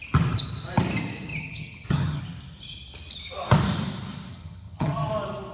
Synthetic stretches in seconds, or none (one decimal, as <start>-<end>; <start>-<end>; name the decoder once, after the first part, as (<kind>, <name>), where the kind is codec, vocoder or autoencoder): 1.3-2.2 (vocoder, HiFi-GAN); 4.3-5.1